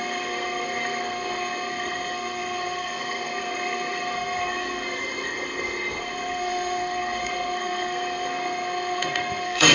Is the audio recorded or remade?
remade